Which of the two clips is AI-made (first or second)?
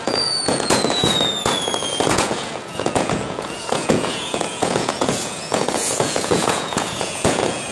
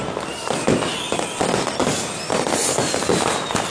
first